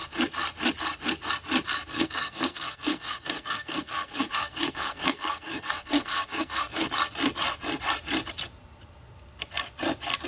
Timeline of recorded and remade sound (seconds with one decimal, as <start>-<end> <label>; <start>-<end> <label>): 0.0-1.9 recorded; 1.9-6.9 remade; 6.9-10.3 recorded